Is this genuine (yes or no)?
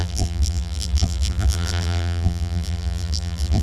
no